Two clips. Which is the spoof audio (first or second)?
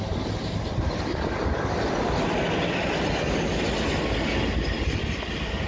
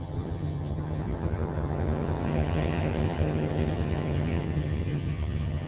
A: second